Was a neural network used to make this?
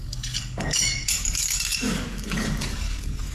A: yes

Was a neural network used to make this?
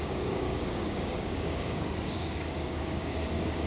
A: yes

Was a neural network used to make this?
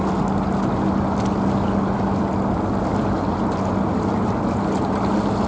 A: no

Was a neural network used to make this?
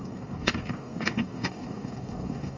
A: yes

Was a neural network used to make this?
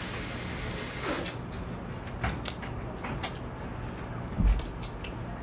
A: no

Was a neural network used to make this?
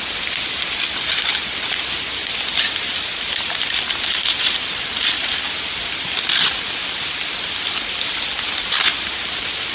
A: no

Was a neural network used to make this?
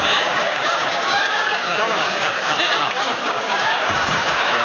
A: yes